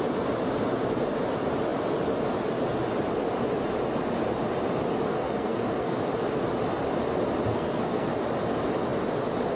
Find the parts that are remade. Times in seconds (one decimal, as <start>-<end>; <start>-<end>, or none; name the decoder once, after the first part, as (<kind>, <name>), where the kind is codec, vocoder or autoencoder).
5.1-6.0 (codec, SNAC); 7.5-8.1